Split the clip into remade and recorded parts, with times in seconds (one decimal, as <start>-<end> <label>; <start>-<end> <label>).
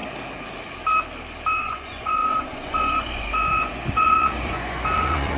0.0-1.6 recorded; 1.6-5.4 remade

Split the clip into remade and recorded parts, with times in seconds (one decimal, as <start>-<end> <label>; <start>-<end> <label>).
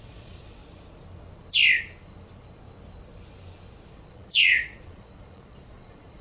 0.0-0.6 remade; 0.6-3.9 recorded; 3.9-6.2 remade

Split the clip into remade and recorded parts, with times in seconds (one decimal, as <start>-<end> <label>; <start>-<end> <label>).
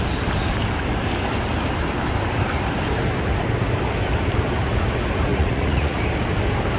0.0-5.3 recorded; 5.3-6.0 remade; 6.0-6.8 recorded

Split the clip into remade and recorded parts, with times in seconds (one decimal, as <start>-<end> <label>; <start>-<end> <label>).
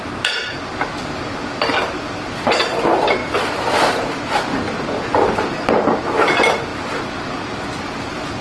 0.0-8.4 recorded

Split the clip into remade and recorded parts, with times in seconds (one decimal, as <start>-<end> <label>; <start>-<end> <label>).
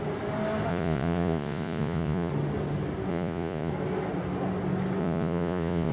0.0-0.7 recorded; 0.7-2.3 remade; 2.3-3.1 recorded; 3.1-3.7 remade; 3.7-5.0 recorded; 5.0-5.9 remade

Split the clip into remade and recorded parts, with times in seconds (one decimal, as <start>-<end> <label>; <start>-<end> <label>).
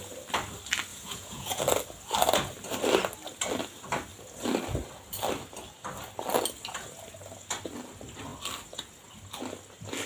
0.0-0.9 recorded; 0.9-1.6 remade; 1.6-10.1 recorded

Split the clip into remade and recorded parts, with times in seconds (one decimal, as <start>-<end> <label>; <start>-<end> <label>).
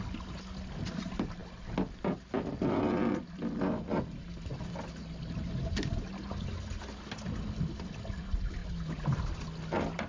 0.0-10.1 recorded